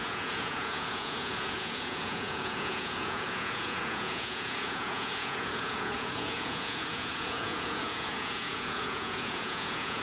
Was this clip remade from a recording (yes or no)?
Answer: yes